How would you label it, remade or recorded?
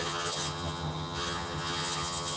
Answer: remade